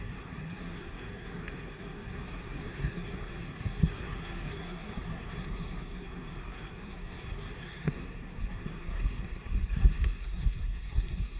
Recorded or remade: remade